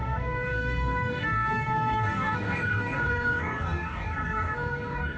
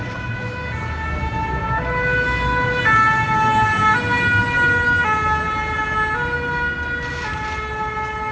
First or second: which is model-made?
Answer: first